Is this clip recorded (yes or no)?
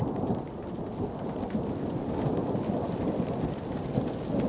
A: yes